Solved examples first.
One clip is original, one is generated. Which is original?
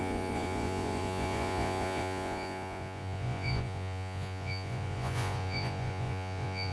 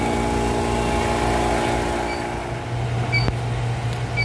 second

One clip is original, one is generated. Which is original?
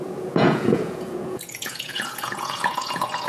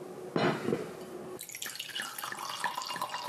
second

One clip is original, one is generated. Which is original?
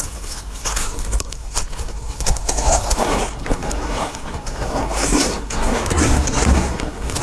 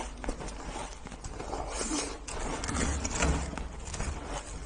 second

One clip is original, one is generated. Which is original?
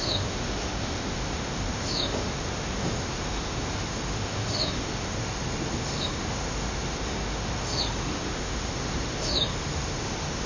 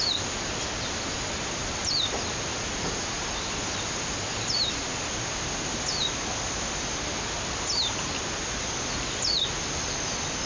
second